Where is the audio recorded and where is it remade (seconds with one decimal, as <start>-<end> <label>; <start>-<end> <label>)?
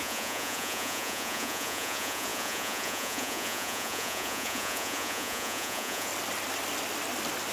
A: 0.0-6.1 remade; 6.1-7.5 recorded